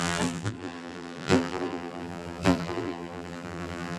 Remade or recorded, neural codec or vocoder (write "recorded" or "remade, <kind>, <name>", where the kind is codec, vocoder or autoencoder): remade, vocoder, BigVGAN v2